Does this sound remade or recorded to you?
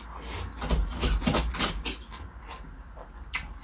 recorded